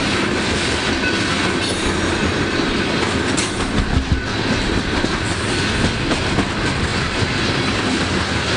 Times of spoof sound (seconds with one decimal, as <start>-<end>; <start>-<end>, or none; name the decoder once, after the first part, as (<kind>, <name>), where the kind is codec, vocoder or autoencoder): none